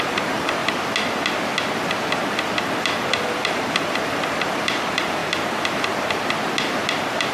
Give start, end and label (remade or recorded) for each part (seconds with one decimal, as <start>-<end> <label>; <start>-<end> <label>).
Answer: 0.0-0.6 remade; 0.6-3.1 recorded; 3.1-5.2 remade; 5.2-7.3 recorded